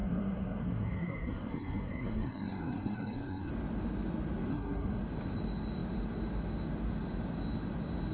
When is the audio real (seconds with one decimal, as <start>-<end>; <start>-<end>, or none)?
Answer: 3.5-4.5; 5.0-8.1